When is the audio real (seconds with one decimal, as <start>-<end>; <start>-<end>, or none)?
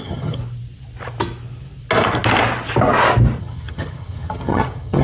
0.4-3.4